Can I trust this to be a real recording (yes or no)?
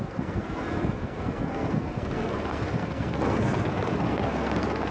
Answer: no